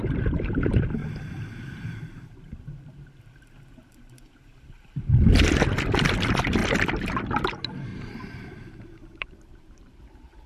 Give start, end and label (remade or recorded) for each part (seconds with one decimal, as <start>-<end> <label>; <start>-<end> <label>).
0.0-7.9 recorded; 7.9-10.0 remade; 10.0-10.5 recorded